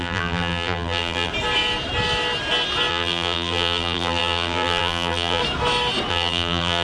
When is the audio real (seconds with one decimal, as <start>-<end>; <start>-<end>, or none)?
1.3-2.9; 5.4-6.1